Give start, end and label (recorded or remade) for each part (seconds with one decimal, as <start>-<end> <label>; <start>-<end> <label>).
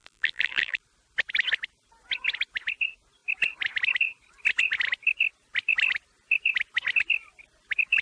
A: 0.0-0.8 remade; 0.8-8.0 recorded